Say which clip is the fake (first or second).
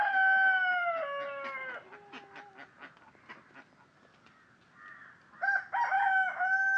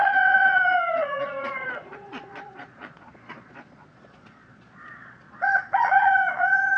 second